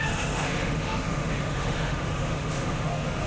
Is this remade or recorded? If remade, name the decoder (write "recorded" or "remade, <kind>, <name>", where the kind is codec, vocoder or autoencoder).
remade, autoencoder, DAC-VAE